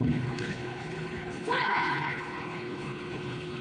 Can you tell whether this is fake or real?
fake